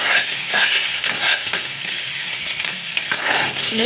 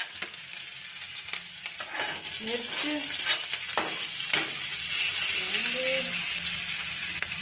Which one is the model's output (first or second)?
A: first